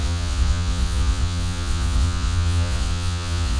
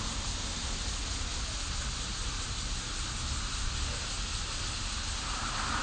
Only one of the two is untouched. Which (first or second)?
second